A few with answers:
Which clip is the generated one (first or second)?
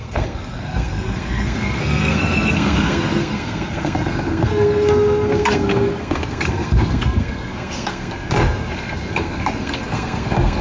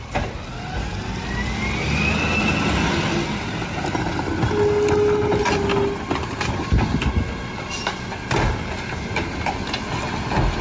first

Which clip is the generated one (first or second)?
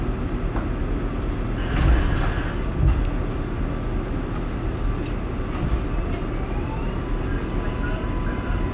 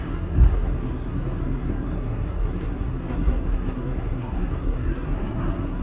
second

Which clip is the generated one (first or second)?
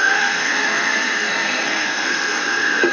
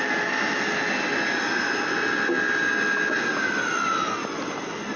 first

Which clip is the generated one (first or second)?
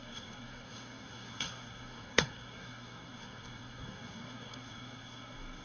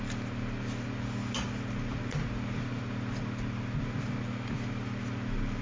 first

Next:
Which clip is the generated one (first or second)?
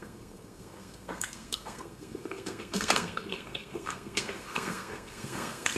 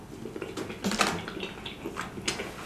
first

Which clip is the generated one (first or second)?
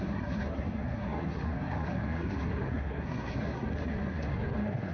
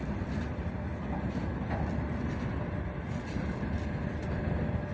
first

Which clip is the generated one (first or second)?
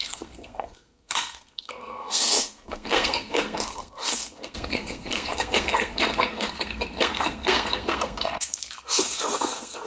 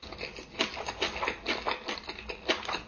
first